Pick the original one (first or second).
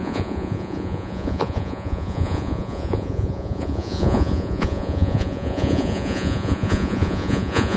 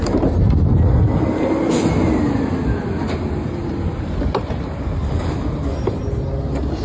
second